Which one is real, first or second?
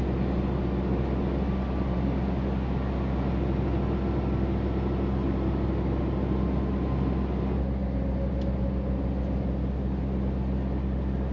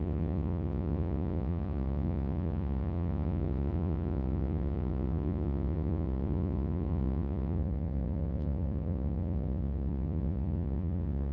first